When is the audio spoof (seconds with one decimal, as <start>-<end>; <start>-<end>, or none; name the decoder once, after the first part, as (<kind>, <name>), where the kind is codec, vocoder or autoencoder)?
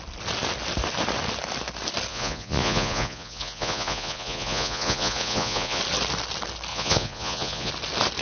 2.1-5.8 (vocoder, Vocos); 6.7-7.7